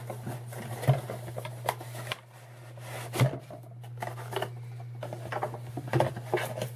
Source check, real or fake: real